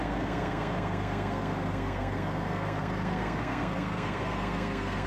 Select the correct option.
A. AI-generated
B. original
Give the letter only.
A